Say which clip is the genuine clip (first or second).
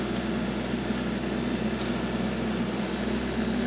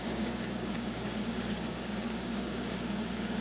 first